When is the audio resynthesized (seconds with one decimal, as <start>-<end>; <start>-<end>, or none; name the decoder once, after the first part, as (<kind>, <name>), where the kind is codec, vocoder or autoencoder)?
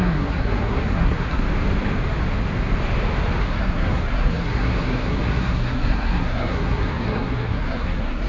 0.0-1.4 (codec, SNAC); 3.4-8.3